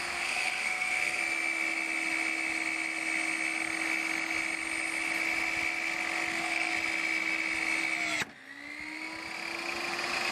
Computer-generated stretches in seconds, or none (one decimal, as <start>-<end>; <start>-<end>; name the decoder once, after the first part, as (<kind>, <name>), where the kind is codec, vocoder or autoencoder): 0.0-1.2 (codec, SNAC); 6.3-6.7